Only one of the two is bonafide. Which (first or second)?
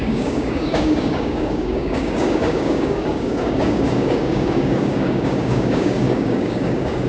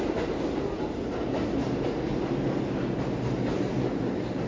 second